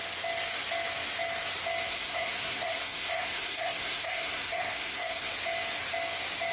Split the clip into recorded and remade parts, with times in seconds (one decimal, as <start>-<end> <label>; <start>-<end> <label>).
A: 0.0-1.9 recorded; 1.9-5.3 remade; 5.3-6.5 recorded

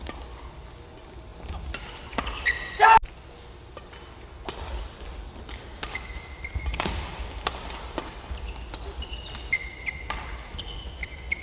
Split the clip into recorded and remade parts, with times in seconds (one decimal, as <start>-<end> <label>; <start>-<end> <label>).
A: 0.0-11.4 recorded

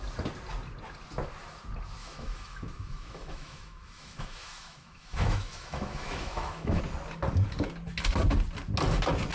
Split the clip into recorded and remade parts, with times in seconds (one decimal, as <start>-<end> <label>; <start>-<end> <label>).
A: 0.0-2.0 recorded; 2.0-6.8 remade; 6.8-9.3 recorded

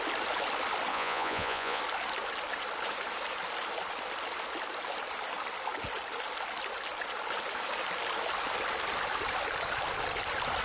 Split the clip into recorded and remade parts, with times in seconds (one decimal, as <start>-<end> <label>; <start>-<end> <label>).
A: 0.0-0.9 recorded; 0.9-1.8 remade; 1.8-10.6 recorded

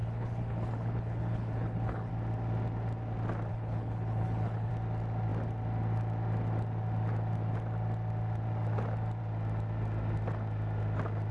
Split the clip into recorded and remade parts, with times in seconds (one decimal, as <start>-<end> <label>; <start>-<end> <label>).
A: 0.0-2.1 remade; 2.1-3.5 recorded; 3.5-4.7 remade; 4.7-11.3 recorded

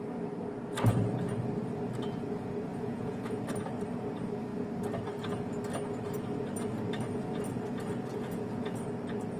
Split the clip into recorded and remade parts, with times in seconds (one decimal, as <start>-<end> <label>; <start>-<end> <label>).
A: 0.0-2.7 recorded; 2.7-3.4 remade; 3.4-8.1 recorded; 8.1-8.8 remade; 8.8-9.4 recorded

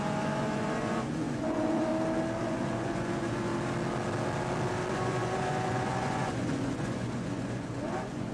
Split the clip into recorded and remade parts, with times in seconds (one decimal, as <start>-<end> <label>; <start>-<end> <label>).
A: 0.0-1.9 remade; 1.9-2.4 recorded; 2.4-3.5 remade; 3.5-4.9 recorded; 4.9-8.3 remade